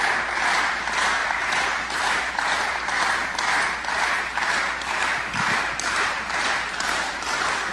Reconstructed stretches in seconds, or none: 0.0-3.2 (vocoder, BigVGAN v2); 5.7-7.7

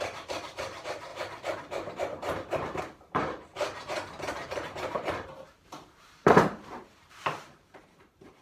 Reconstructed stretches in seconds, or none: 0.0-3.5 (vocoder, BigVGAN v2); 4.3-8.4

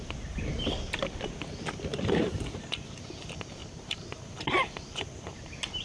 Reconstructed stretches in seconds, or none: 1.9-2.4 (vocoder, BigVGAN v2); 3.6-4.2

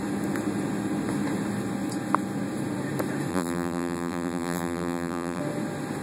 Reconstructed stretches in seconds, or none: 3.3-5.4 (vocoder, BigVGAN v2)

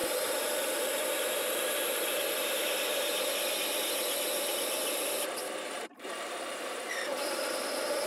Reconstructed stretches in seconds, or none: 0.0-3.3 (vocoder, BigVGAN v2); 4.5-7.5

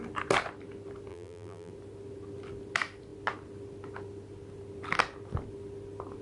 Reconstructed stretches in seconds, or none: 1.1-1.7 (vocoder, BigVGAN v2)

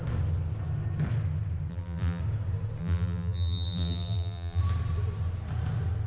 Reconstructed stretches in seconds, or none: 1.7-2.2 (vocoder, BigVGAN v2); 2.8-4.6

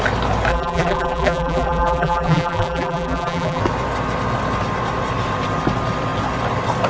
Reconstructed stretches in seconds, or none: 0.5-3.6 (vocoder, BigVGAN v2)